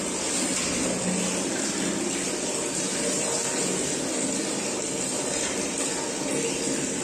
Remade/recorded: recorded